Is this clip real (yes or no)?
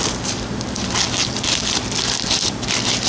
yes